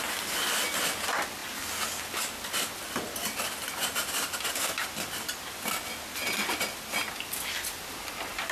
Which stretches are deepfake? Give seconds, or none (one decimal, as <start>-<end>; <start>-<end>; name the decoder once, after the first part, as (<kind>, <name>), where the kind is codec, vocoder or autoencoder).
none